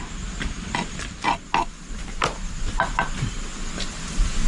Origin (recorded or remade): recorded